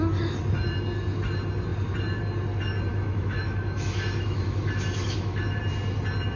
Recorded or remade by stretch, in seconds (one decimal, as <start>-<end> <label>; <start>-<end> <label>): 0.0-2.9 recorded; 2.9-5.6 remade; 5.6-6.4 recorded